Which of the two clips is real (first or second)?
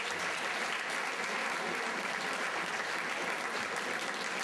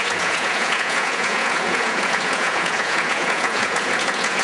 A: first